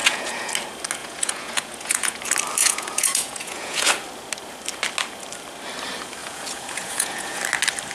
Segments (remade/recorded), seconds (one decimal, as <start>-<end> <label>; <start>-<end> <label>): 0.0-0.5 remade; 0.5-1.0 recorded; 1.0-2.2 remade; 2.2-2.6 recorded; 2.6-3.9 remade; 3.9-6.2 recorded; 6.2-7.4 remade; 7.4-7.9 recorded